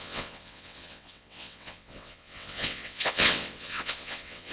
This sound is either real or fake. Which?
fake